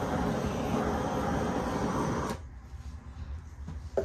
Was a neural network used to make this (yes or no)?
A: no